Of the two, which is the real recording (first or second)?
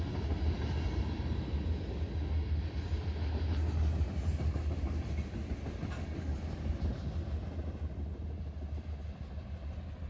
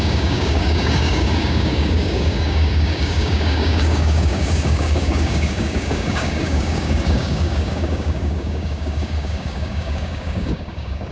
first